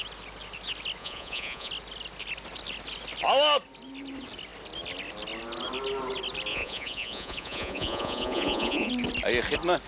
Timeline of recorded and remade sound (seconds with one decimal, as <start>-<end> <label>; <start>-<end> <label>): 0.0-1.0 recorded; 1.0-1.7 remade; 1.7-6.5 recorded; 6.5-8.9 remade; 8.9-9.9 recorded

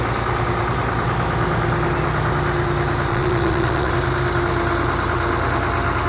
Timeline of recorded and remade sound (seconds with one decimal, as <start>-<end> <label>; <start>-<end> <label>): 0.0-3.1 recorded; 3.1-3.9 remade; 3.9-6.1 recorded

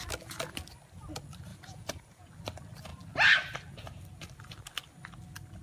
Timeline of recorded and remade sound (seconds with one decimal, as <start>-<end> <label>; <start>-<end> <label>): 0.0-1.5 recorded; 1.5-2.2 remade; 2.2-5.6 recorded

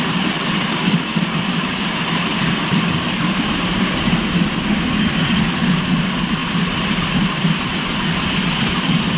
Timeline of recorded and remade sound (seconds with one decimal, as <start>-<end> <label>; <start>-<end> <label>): 0.0-9.2 recorded

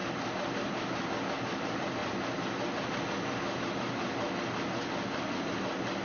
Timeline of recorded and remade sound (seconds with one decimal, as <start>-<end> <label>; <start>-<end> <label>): 0.0-6.0 recorded

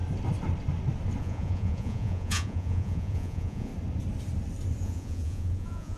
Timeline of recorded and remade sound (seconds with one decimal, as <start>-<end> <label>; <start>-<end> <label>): 0.0-1.2 recorded; 1.2-3.7 remade; 3.7-4.8 recorded; 4.8-6.0 remade